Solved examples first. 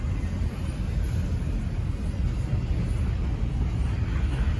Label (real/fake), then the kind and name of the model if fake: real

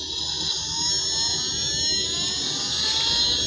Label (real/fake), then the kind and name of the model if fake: real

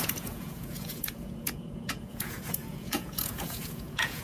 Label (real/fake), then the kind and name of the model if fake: fake, vocoder, Vocos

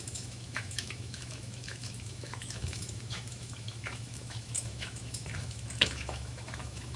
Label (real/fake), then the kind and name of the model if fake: fake, autoencoder, DAC-VAE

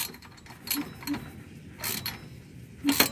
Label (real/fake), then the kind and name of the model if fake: real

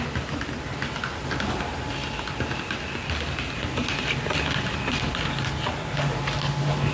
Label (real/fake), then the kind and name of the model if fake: real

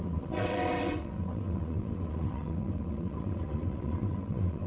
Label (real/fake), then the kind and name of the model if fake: fake, vocoder, WaveNeXt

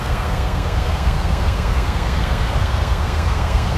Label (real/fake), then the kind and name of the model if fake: fake, codec, SNAC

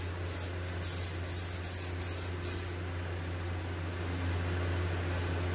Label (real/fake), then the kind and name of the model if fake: real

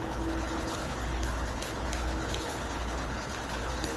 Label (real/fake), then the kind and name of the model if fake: fake, codec, HILCodec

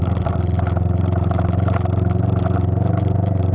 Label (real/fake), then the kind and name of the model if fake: real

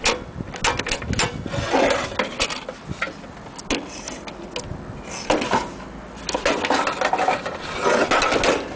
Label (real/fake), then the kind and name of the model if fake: real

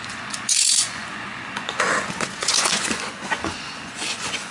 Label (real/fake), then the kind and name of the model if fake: fake, vocoder, Vocos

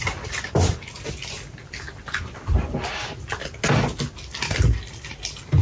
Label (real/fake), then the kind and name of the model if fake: real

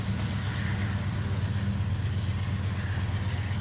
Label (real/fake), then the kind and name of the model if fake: real